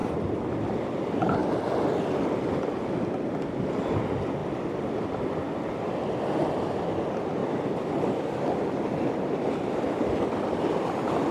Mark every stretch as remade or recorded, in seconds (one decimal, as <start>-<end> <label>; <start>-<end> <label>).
0.0-11.3 recorded